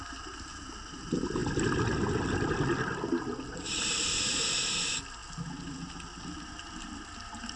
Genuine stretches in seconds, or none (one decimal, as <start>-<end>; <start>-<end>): 0.0-7.6